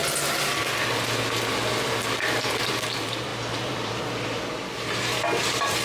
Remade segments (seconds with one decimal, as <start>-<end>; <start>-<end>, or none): 2.6-5.8